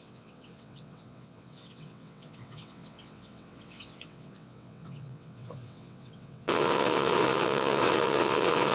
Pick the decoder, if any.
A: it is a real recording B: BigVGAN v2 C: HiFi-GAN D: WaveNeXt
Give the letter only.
D